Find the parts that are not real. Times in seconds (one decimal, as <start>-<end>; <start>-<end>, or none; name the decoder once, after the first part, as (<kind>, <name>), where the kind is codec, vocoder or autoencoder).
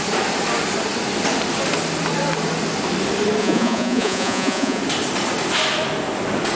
3.4-4.8 (vocoder, Vocos)